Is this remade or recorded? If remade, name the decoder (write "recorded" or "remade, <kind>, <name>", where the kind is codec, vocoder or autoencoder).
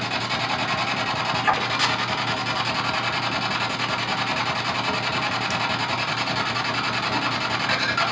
recorded